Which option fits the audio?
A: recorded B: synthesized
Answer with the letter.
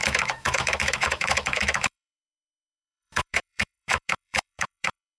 B